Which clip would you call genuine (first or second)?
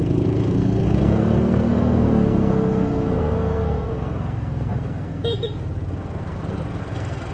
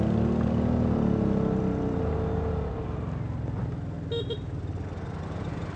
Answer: second